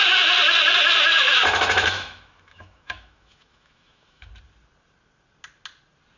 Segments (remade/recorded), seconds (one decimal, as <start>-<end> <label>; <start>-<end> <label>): 0.0-1.1 recorded; 1.1-4.3 remade; 4.3-6.2 recorded